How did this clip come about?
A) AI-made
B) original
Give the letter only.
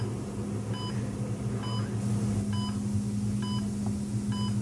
B